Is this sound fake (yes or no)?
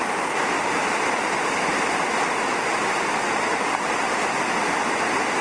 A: no